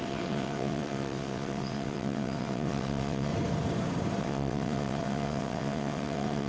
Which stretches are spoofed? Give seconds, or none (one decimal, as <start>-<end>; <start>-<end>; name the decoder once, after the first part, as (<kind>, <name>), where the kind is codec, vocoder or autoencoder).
0.0-3.3 (vocoder, WaveNeXt); 4.2-6.5